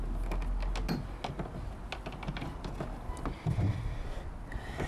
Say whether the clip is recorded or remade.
recorded